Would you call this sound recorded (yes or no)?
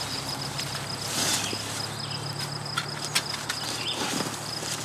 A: yes